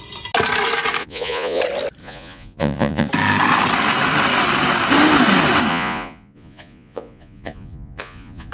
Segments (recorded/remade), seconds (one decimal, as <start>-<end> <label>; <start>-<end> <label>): 0.0-1.0 recorded; 1.0-1.6 remade; 1.6-2.0 recorded; 2.0-3.1 remade; 3.1-5.7 recorded; 5.7-8.5 remade